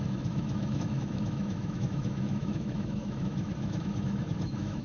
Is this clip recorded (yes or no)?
no